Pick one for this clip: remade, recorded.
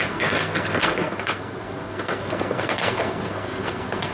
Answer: remade